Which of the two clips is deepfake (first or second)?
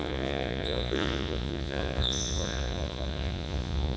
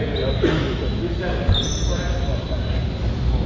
first